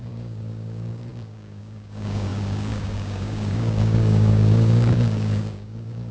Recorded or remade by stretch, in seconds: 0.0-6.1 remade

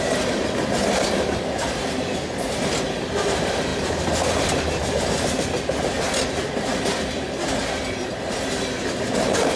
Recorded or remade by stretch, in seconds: 0.0-9.6 recorded

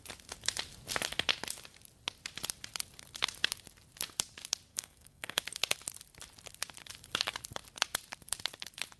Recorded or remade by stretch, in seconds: 0.0-4.7 recorded; 4.7-5.4 remade; 5.4-9.0 recorded